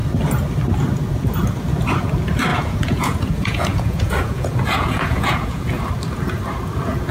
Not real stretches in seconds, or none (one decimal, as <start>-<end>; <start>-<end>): 2.5-5.8

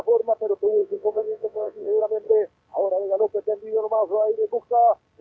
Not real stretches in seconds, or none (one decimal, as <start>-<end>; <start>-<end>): 0.8-2.0

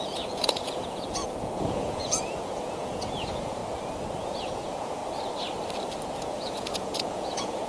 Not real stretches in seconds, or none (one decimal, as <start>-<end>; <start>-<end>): 0.0-3.6; 4.2-5.0; 6.2-7.7